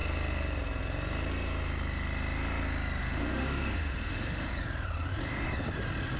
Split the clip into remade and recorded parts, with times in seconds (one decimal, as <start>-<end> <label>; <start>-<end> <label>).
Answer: 0.0-3.0 recorded; 3.0-4.5 remade; 4.5-6.2 recorded